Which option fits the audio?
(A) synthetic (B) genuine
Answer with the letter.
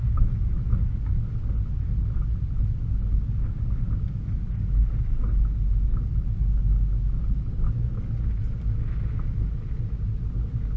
B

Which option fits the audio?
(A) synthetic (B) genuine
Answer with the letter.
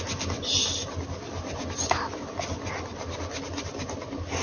B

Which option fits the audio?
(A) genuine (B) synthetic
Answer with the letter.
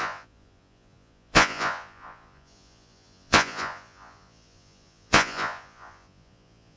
B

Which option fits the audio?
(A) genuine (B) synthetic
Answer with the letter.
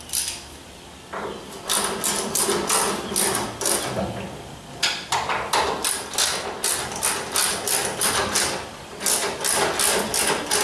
A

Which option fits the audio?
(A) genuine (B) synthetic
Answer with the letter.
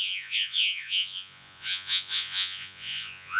B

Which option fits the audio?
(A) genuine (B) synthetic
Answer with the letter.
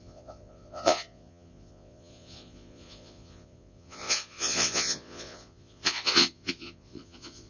B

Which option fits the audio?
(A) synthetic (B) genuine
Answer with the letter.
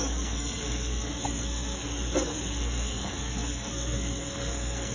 A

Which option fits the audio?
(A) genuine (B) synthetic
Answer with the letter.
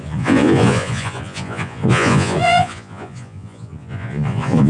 B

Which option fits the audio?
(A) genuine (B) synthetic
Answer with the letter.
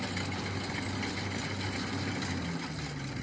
A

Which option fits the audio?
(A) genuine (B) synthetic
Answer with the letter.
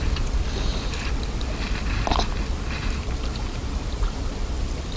A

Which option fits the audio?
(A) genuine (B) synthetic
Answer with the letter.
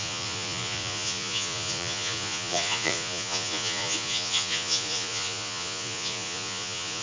B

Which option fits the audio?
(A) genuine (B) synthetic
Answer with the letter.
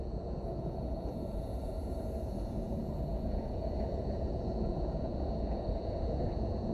B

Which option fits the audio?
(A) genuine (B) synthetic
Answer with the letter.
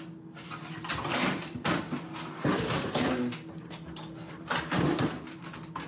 A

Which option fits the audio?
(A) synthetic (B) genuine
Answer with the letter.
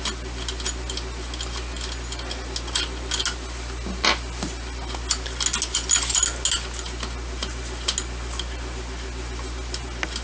B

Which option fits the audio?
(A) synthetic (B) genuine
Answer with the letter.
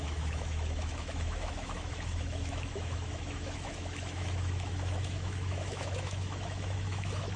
A